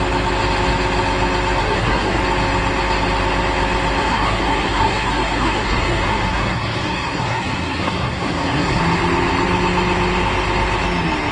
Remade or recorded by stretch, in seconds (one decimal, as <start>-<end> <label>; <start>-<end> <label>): 0.0-1.6 recorded; 1.6-2.2 remade; 2.2-4.0 recorded; 4.0-8.8 remade; 8.8-11.3 recorded